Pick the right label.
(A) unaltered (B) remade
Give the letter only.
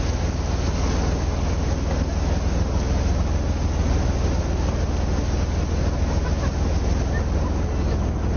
A